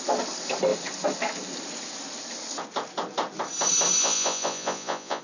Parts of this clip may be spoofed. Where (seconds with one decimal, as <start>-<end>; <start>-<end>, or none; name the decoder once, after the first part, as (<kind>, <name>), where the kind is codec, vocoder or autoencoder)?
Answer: 4.0-5.2 (vocoder, Vocos)